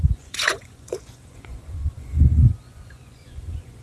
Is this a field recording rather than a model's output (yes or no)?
no